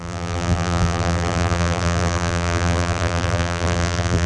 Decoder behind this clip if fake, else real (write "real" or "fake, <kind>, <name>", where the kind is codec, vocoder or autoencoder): fake, vocoder, BigVGAN v2